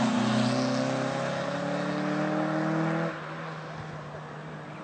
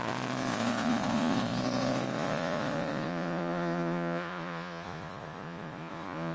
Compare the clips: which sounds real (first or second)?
first